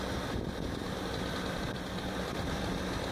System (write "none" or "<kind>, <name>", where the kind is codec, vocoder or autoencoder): none